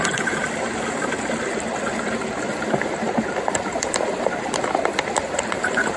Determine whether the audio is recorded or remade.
recorded